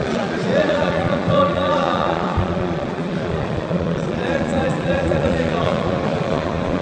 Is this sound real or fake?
fake